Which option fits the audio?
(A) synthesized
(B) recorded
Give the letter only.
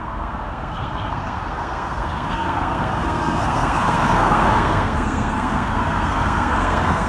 A